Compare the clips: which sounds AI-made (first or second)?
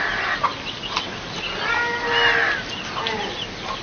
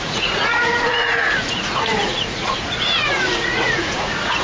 second